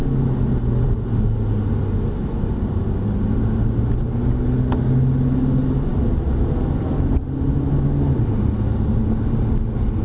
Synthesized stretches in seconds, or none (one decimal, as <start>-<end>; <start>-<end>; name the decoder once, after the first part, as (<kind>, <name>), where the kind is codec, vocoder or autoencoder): none